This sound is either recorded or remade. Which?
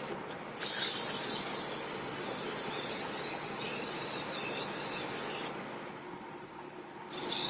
recorded